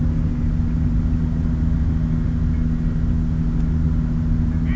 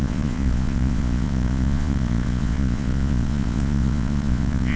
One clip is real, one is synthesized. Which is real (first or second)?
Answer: first